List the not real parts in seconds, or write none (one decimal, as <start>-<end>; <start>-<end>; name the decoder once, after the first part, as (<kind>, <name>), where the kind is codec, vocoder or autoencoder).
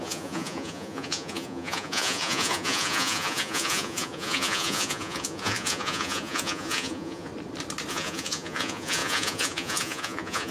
0.0-7.3 (vocoder, Vocos); 7.9-10.5